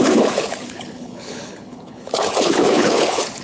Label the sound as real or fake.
fake